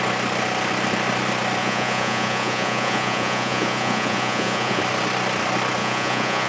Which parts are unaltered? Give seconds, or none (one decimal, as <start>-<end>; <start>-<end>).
0.0-1.6; 4.8-5.8